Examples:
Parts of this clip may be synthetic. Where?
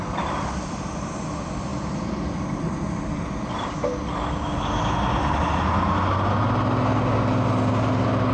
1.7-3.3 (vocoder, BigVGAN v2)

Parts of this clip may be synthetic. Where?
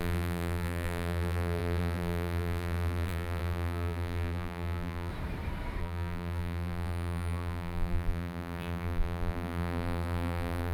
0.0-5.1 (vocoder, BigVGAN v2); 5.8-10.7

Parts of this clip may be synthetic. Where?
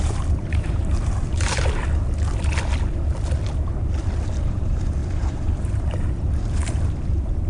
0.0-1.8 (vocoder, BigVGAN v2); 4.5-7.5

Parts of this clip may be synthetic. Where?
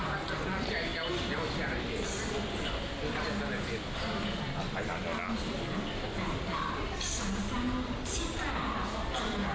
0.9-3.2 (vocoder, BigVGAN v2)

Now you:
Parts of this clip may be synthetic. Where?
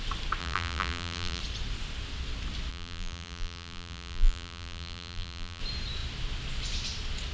0.4-1.4 (vocoder, BigVGAN v2); 2.7-5.6